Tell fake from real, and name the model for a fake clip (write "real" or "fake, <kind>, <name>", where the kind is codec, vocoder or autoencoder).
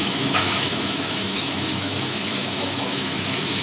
fake, autoencoder, DAC-VAE